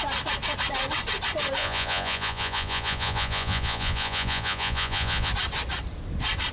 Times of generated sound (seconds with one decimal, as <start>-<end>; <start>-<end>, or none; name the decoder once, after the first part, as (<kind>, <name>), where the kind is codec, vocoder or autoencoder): 1.6-5.3 (vocoder, Vocos)